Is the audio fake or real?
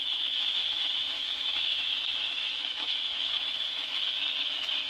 fake